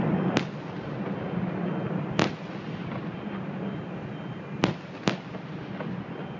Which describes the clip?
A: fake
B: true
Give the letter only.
B